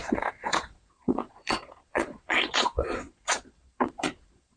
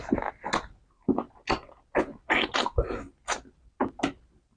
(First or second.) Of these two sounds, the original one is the second